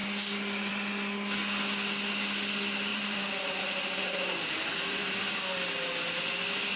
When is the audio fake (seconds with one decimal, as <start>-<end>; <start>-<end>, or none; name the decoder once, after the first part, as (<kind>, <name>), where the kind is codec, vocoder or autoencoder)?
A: 2.9-5.3 (vocoder, BigVGAN v2)